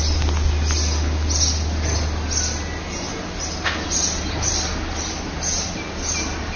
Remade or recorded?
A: recorded